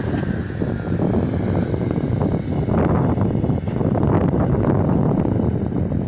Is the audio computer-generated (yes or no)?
no